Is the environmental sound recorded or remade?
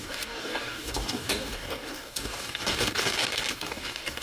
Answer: remade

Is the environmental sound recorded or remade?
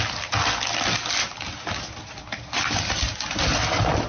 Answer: recorded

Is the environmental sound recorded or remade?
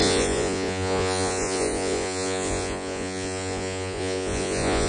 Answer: remade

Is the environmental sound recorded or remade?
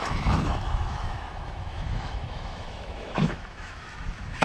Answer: remade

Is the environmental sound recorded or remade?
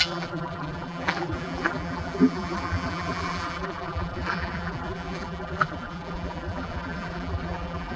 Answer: remade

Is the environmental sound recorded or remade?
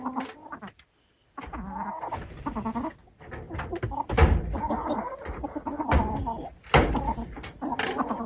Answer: recorded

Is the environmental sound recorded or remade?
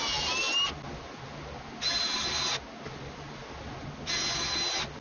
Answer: recorded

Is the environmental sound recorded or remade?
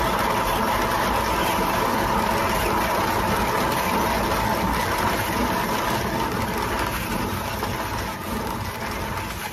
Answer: recorded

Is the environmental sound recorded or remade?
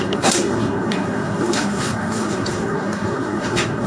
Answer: remade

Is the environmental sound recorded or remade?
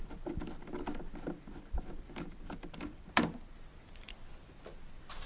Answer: recorded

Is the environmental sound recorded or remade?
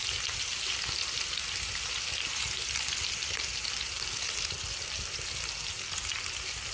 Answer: recorded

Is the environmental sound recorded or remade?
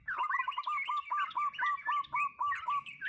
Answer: recorded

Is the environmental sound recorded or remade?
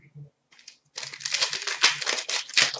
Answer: recorded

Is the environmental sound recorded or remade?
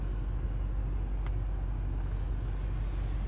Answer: recorded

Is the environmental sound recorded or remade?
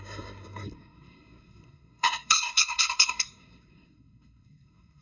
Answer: remade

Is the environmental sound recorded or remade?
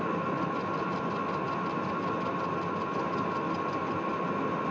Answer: remade